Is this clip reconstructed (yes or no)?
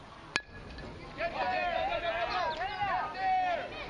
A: no